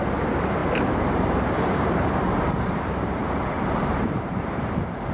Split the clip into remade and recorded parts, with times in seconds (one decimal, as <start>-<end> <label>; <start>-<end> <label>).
0.0-5.1 remade